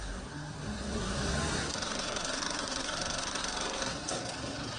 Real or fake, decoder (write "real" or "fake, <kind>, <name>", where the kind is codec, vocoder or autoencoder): fake, codec, SNAC